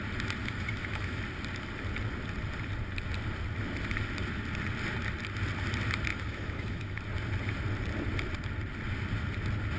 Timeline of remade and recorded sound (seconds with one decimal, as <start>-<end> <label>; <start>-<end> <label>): 0.0-0.4 recorded; 0.4-1.2 remade; 1.2-6.1 recorded; 6.1-7.0 remade; 7.0-9.8 recorded